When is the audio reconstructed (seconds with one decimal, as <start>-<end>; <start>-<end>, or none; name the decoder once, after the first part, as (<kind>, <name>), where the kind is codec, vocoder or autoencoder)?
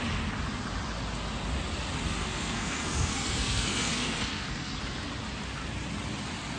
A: 2.2-4.8 (codec, SNAC)